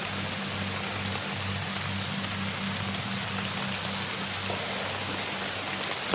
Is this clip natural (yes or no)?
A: yes